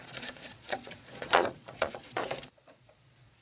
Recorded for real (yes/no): no